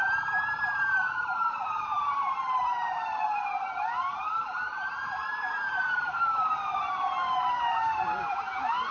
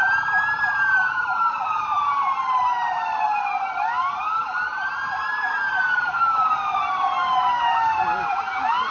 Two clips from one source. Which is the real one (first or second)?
second